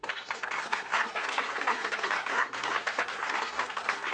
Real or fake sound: fake